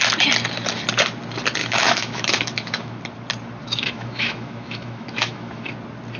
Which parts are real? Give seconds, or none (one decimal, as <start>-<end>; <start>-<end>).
0.0-1.6; 3.0-3.6; 5.7-6.2

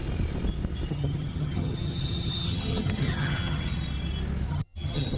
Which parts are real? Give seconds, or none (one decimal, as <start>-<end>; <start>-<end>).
0.0-0.9; 3.7-4.5

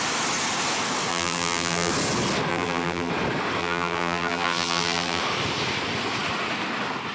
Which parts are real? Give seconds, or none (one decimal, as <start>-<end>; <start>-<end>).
0.0-1.1; 1.9-2.5; 3.1-3.6; 5.2-7.1

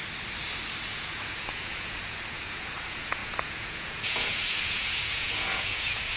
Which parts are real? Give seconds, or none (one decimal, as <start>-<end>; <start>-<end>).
0.0-0.8

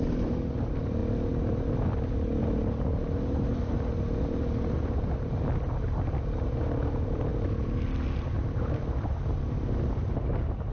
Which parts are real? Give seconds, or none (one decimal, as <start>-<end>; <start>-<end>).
0.0-10.7

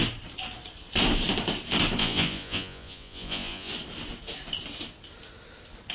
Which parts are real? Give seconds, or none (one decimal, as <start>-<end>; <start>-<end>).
0.0-2.0; 3.7-5.9

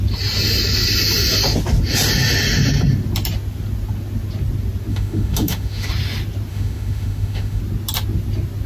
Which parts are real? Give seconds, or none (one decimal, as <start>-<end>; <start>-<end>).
0.0-4.9; 5.9-6.5; 7.6-8.7